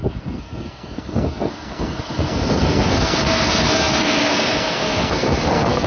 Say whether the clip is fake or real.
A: fake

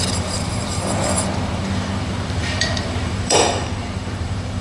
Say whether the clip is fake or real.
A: fake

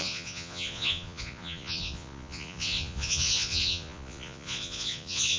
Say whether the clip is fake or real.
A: fake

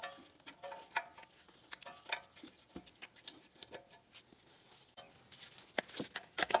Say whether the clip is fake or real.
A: real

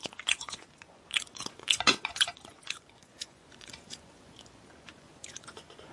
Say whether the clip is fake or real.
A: fake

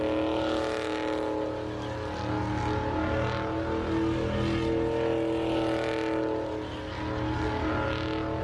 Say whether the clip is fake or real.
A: real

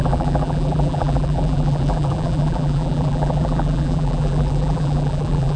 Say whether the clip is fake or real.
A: fake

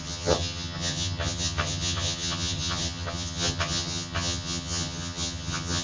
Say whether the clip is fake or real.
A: fake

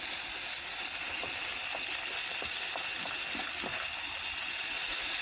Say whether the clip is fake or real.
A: real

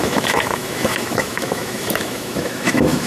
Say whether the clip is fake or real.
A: fake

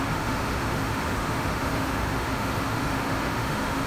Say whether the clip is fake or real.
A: fake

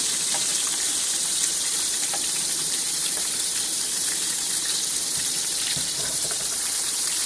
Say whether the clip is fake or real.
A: fake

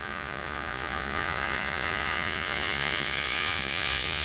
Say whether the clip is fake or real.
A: fake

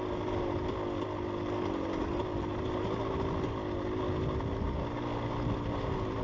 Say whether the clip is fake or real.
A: real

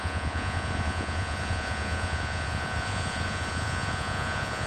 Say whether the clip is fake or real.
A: fake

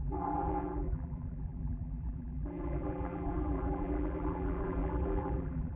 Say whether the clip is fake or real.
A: fake